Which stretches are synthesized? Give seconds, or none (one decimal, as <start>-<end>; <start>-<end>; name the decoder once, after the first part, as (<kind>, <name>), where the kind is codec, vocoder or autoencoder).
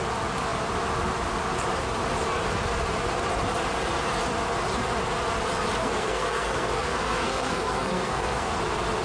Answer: 5.8-8.6 (codec, SNAC)